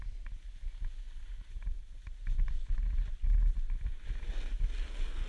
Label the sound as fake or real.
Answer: real